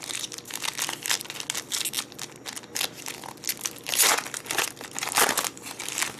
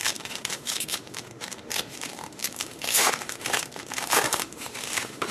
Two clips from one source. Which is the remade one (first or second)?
second